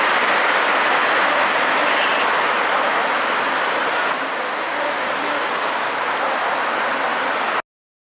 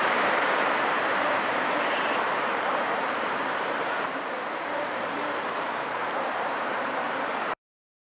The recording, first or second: first